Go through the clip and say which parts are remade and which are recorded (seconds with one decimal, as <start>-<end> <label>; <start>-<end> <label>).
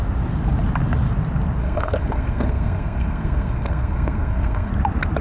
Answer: 0.0-1.6 recorded; 1.6-4.7 remade; 4.7-5.2 recorded